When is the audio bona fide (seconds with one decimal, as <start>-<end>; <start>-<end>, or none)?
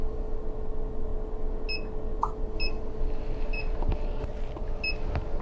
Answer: 0.0-5.4